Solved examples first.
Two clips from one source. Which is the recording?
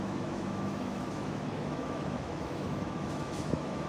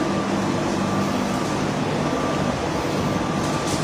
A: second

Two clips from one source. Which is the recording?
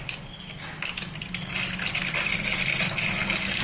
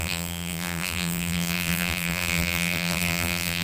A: first